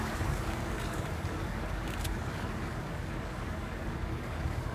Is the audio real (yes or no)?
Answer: no